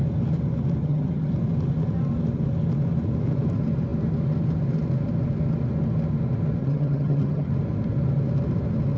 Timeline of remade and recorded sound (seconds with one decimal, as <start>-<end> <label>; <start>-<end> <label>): 0.0-0.8 recorded; 0.8-1.3 remade; 1.3-6.6 recorded; 6.6-7.5 remade; 7.5-9.0 recorded